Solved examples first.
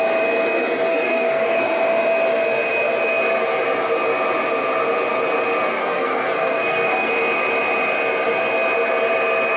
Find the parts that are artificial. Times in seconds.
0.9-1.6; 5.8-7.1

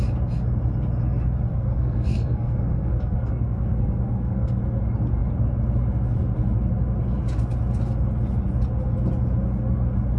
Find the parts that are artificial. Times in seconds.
1.5-4.6

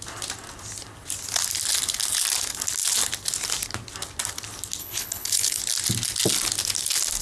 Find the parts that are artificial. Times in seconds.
4.8-5.6

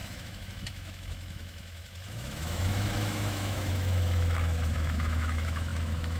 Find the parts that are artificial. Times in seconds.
0.0-6.2

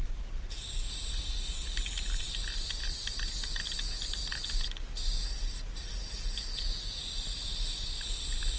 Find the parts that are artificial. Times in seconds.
none

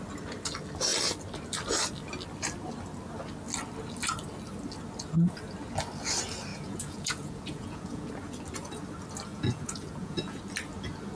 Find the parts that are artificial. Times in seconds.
6.5-8.1; 9.3-10.4

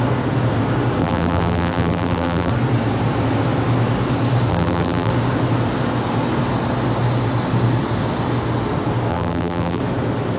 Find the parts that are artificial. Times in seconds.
1.0-2.5; 4.5-5.1; 9.1-9.8